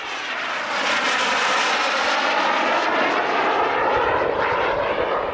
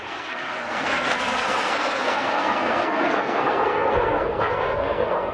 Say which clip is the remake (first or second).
second